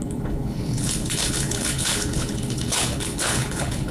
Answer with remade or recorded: remade